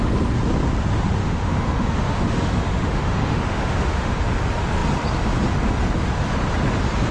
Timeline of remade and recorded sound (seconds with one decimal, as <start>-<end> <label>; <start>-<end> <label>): 0.0-1.2 recorded; 1.2-4.2 remade; 4.2-7.1 recorded